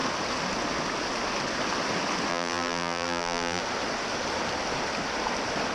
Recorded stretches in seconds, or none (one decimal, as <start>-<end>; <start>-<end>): 0.0-2.3; 3.6-5.7